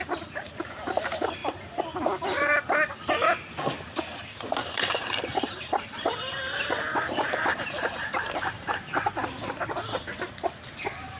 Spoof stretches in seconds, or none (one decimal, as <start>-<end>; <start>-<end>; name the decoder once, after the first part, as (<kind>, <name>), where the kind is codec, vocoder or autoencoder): 4.6-6.3 (vocoder, BigVGAN v2); 7.5-8.8